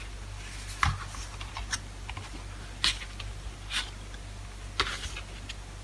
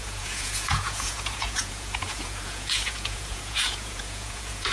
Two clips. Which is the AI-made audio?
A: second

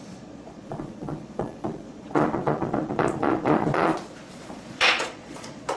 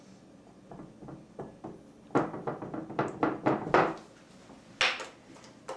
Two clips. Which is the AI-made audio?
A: first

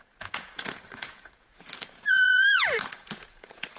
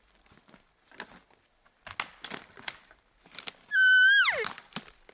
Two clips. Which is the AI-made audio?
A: first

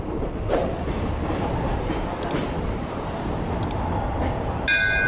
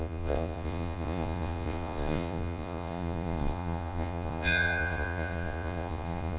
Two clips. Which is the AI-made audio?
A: second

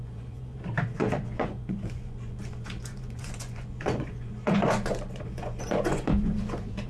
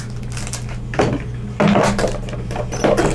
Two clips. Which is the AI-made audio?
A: first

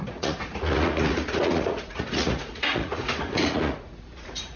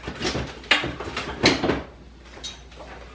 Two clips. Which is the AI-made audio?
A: first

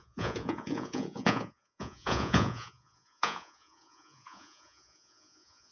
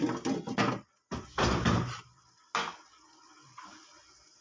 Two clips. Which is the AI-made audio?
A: first